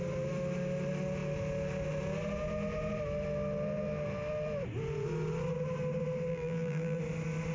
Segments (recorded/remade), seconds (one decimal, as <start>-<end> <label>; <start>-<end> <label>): 0.0-6.3 recorded; 6.3-7.0 remade; 7.0-7.5 recorded